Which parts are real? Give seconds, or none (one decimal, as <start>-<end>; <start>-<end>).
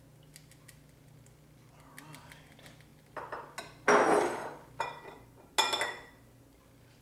0.0-7.0